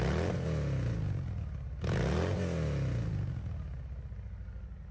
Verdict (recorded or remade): recorded